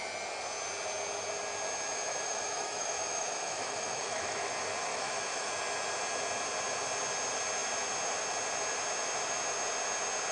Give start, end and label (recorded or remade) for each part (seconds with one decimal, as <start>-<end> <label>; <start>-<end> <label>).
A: 0.0-2.1 recorded; 2.1-4.5 remade; 4.5-4.9 recorded; 4.9-5.5 remade; 5.5-10.3 recorded